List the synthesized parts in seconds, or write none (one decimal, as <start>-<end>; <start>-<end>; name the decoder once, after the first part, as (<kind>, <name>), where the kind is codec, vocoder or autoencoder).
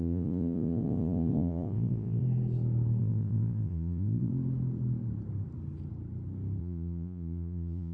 0.0-2.2 (vocoder, Vocos); 3.0-4.3; 6.6-7.9